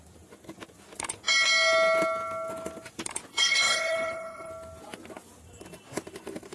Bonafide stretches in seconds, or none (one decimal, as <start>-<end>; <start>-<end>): 0.0-3.3; 4.5-6.5